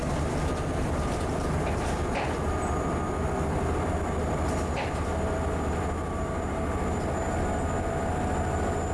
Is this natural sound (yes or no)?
yes